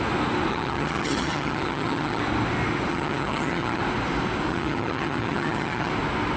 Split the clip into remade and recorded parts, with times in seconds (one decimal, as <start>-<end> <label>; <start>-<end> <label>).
0.0-0.5 recorded; 0.5-2.2 remade; 2.2-2.9 recorded; 2.9-3.8 remade; 3.8-4.5 recorded; 4.5-5.9 remade; 5.9-6.4 recorded